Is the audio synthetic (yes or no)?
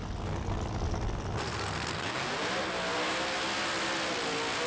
no